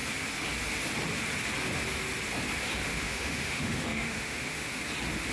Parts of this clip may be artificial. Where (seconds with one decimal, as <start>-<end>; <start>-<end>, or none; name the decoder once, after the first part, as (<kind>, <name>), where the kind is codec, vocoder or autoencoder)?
2.9-4.8 (autoencoder, DAC-VAE)